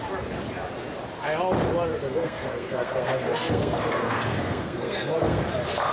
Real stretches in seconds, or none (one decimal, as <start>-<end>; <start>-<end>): 0.0-1.9; 5.4-5.9

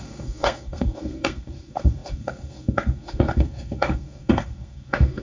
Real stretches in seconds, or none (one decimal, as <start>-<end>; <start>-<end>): none

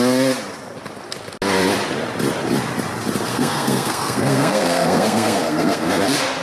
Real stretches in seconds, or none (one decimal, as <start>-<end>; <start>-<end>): 0.0-3.3; 6.0-6.4

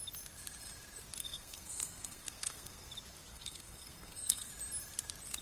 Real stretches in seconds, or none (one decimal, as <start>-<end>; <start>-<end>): 0.0-1.2; 2.9-3.3; 4.5-5.4

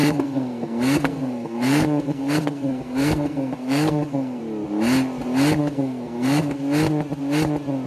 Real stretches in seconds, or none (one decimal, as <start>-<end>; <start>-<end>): 4.4-5.6; 6.6-7.9

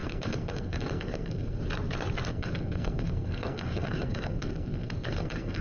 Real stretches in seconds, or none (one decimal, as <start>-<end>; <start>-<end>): 1.6-2.3

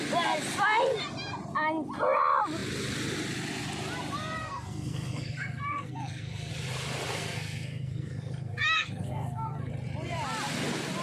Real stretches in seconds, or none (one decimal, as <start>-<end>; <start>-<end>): 0.0-4.4; 6.5-7.1; 9.7-11.0